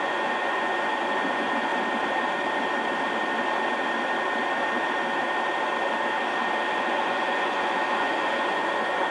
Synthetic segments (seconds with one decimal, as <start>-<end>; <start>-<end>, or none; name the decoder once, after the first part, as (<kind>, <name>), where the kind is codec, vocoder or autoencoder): 0.0-1.7 (vocoder, Vocos); 6.7-9.1